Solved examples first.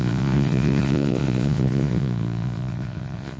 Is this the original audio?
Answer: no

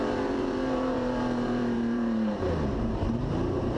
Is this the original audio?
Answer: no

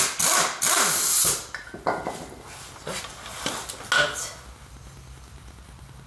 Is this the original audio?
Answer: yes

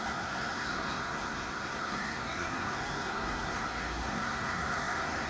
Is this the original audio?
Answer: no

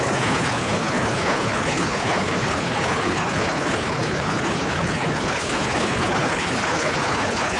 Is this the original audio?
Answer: no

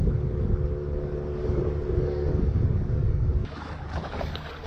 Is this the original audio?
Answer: no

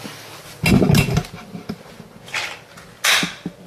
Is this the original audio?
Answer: yes